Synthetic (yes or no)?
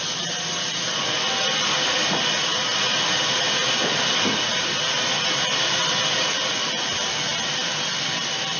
no